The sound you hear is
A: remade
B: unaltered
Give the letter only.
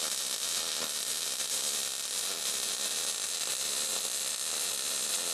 B